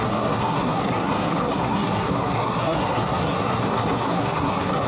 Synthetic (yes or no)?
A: yes